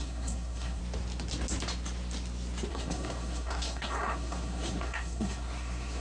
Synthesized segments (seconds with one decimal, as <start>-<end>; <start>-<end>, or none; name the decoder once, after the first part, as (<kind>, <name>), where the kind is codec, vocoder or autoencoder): 0.0-0.8 (codec, SNAC); 2.7-6.0